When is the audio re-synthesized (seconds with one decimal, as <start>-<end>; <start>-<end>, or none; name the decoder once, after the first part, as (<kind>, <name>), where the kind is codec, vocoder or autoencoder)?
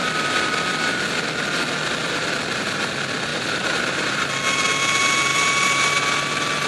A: 3.3-4.3 (vocoder, BigVGAN v2); 5.3-6.7